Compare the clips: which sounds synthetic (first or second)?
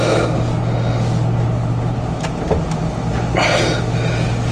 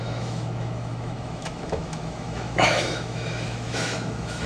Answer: second